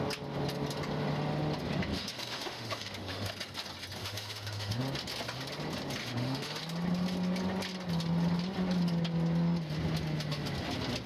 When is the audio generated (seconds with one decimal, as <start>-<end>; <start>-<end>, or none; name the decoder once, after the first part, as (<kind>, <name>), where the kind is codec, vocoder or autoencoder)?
1.9-3.3 (autoencoder, DAC-VAE); 4.0-4.8; 6.0-6.6